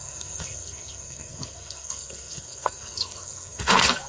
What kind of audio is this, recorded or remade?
remade